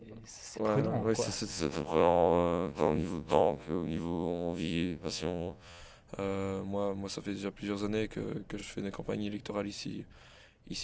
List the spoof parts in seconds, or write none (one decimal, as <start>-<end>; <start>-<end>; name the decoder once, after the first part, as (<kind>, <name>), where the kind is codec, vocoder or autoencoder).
1.5-5.8 (vocoder, Vocos)